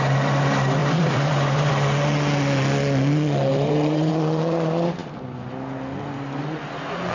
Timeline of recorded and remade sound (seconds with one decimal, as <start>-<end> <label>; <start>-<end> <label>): 0.0-0.8 recorded; 0.8-1.7 remade; 1.7-3.5 recorded; 3.5-4.1 remade; 4.1-7.1 recorded